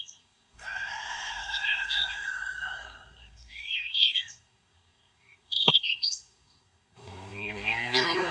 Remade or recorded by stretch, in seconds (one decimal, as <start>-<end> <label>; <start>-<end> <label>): 0.0-8.3 remade

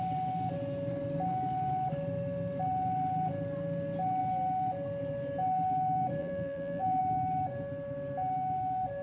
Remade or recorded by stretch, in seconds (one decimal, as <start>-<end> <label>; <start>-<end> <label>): 0.0-6.2 recorded; 6.2-7.0 remade; 7.0-9.0 recorded

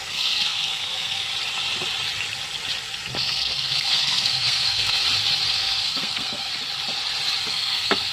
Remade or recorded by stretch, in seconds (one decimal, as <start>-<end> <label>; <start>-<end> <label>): 0.0-1.3 remade; 1.3-3.2 recorded; 3.2-5.0 remade; 5.0-5.5 recorded; 5.5-6.5 remade; 6.5-7.5 recorded; 7.5-8.1 remade

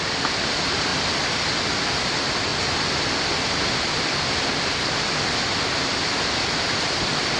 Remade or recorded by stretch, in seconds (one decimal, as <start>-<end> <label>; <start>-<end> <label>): 0.0-0.9 remade; 0.9-2.0 recorded; 2.0-2.5 remade; 2.5-6.9 recorded; 6.9-7.4 remade

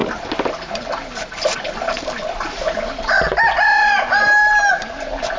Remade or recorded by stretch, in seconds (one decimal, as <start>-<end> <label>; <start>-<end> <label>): 0.0-5.4 recorded

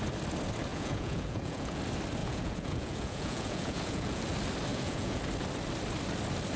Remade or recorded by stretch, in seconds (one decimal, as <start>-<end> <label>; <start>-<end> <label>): 0.0-0.7 recorded; 0.7-1.8 remade; 1.8-2.2 recorded; 2.2-4.2 remade; 4.2-4.7 recorded; 4.7-5.2 remade; 5.2-6.6 recorded